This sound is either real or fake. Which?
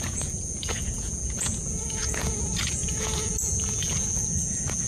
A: fake